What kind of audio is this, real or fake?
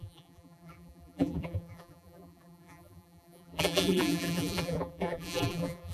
fake